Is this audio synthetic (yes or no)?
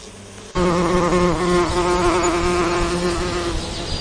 no